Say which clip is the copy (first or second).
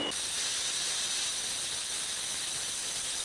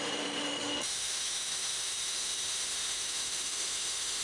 second